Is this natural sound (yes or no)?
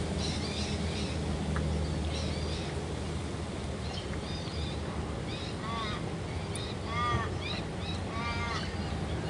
yes